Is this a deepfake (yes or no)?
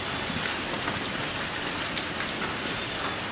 no